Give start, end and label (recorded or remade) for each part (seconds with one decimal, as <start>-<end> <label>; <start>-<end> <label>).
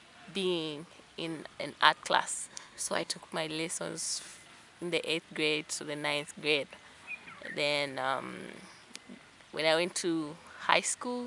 0.0-2.4 recorded; 2.4-3.2 remade; 3.2-11.3 recorded